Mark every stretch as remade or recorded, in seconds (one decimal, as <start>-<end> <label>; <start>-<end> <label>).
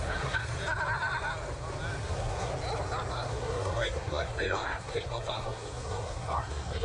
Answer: 0.0-0.5 remade; 0.5-2.0 recorded; 2.0-2.5 remade; 2.5-3.1 recorded; 3.1-6.8 remade